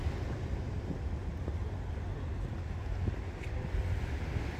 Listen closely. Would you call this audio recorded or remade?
recorded